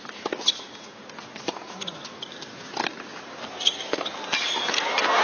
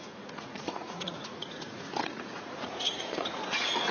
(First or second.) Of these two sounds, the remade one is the second